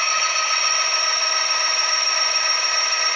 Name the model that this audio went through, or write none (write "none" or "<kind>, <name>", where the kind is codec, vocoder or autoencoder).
none